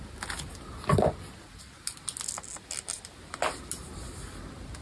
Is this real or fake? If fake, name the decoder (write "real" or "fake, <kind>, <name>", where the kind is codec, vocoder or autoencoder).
real